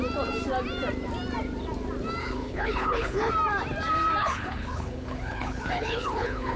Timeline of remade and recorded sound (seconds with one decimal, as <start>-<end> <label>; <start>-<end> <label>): 0.0-2.2 recorded; 2.2-3.3 remade; 3.3-4.2 recorded; 4.2-6.6 remade